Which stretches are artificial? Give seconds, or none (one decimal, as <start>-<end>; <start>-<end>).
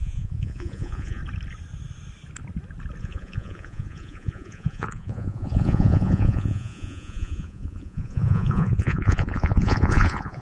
0.0-1.2; 3.0-10.4